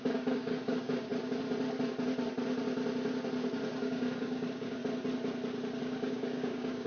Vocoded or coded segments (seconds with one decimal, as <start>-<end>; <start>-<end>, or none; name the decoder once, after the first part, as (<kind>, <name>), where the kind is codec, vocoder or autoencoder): 0.0-1.1 (codec, DAC); 3.7-4.8; 5.8-6.9